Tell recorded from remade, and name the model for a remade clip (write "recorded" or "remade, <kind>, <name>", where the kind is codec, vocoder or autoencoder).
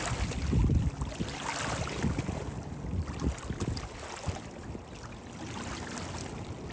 recorded